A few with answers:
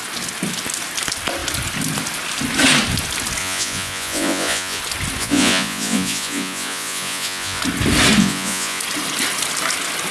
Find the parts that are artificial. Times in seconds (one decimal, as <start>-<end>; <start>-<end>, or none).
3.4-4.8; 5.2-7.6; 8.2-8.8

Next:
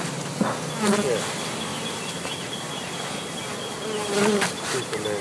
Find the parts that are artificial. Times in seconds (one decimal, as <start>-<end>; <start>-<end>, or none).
none

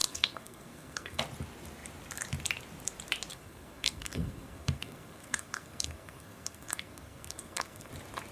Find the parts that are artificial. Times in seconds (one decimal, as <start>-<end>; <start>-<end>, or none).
0.0-1.2; 3.3-7.9

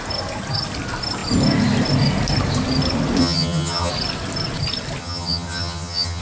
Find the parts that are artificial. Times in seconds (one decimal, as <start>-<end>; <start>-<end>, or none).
3.2-3.9; 5.0-6.2